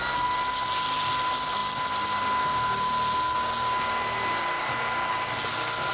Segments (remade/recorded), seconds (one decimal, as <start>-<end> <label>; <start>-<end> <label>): 0.0-5.9 recorded